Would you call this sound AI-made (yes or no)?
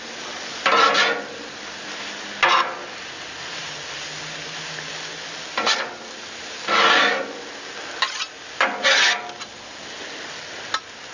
no